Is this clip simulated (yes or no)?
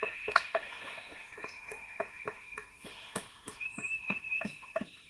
yes